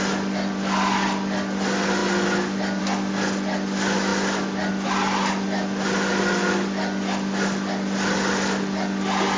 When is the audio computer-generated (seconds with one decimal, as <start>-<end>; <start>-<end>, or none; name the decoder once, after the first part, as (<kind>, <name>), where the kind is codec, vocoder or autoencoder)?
none